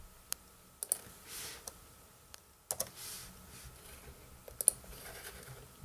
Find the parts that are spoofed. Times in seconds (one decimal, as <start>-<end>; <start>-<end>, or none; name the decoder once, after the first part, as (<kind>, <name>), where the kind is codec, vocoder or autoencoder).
none